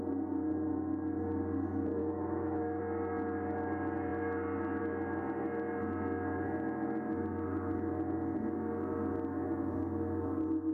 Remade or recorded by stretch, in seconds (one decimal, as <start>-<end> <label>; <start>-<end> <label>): 0.0-2.0 recorded; 2.0-2.8 remade; 2.8-10.7 recorded